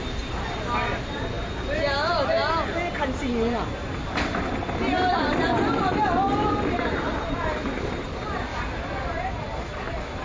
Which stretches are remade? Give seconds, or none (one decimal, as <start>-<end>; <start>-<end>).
none